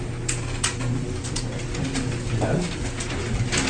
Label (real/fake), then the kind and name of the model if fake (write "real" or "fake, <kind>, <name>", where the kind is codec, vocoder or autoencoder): real